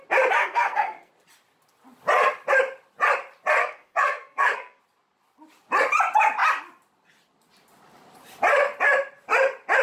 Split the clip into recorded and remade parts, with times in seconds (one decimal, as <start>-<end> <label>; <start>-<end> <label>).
0.0-0.4 recorded; 0.4-1.1 remade; 1.1-3.6 recorded; 3.6-4.8 remade; 4.8-9.8 recorded